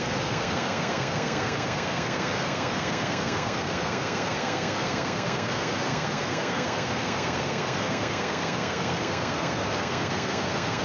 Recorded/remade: remade